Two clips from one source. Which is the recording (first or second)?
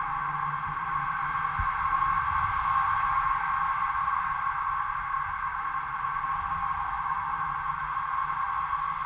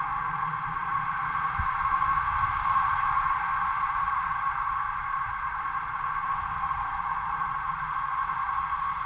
first